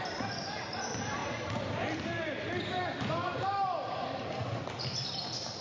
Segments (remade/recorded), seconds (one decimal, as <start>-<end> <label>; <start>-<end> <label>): 0.0-1.2 recorded; 1.2-4.4 remade; 4.4-5.6 recorded